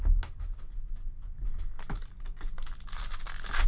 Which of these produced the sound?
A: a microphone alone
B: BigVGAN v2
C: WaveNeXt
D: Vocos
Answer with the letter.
A